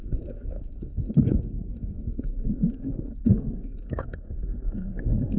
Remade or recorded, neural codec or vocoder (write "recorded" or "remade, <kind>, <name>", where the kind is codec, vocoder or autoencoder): remade, codec, SNAC